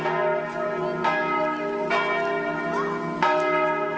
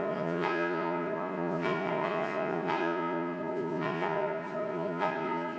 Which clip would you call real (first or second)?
first